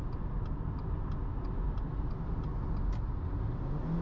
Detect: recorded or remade recorded